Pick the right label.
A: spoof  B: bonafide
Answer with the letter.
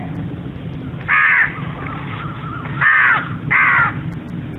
B